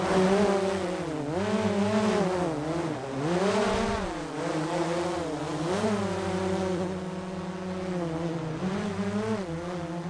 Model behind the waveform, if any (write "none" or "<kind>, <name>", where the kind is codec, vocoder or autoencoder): none